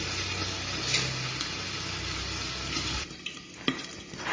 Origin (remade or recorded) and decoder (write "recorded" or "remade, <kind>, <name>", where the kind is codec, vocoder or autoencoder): recorded